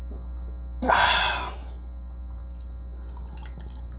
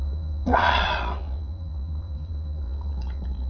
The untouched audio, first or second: first